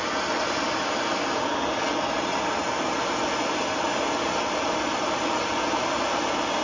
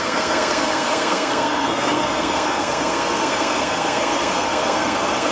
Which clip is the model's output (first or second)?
second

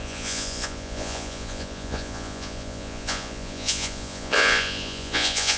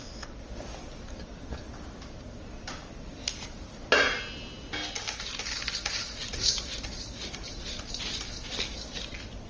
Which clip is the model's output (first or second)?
first